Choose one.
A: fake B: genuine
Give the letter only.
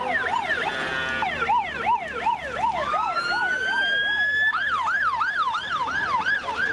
B